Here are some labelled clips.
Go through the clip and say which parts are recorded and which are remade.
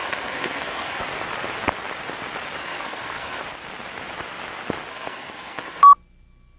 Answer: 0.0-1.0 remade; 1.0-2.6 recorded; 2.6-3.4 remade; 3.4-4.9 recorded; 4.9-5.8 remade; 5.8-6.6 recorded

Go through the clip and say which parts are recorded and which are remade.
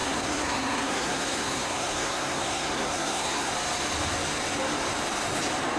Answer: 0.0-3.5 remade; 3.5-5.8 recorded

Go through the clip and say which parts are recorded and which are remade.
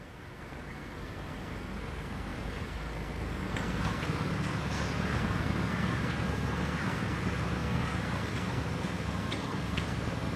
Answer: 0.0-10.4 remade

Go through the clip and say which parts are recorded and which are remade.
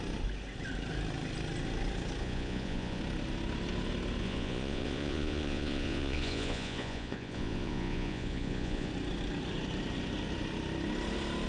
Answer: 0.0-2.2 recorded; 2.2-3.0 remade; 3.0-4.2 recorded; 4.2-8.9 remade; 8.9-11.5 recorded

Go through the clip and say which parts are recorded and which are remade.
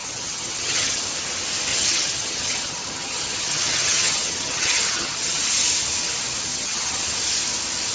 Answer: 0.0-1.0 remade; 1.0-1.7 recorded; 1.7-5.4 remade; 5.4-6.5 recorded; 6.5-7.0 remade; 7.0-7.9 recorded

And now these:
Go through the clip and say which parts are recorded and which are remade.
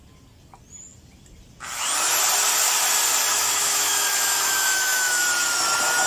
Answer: 0.0-3.3 recorded; 3.3-5.2 remade; 5.2-6.1 recorded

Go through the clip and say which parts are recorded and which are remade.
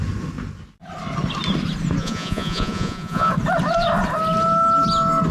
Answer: 0.0-2.0 recorded; 2.0-3.3 remade; 3.3-5.3 recorded